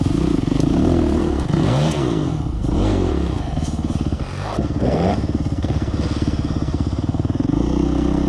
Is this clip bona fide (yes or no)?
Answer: no